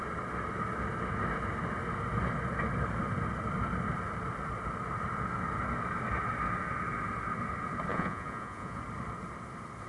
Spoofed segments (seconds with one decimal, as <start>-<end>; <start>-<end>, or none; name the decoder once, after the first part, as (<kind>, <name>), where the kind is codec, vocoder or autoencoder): 7.9-8.8 (vocoder, Vocos)